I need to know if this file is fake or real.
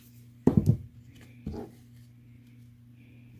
real